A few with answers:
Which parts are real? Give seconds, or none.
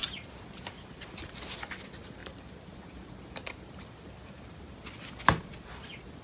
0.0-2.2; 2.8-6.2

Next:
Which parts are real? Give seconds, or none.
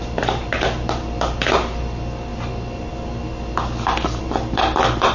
0.0-5.1